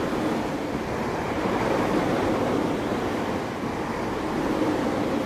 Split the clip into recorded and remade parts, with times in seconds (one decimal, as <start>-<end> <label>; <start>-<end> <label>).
0.0-2.9 recorded; 2.9-4.8 remade; 4.8-5.3 recorded